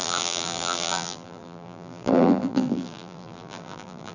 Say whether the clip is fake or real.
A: fake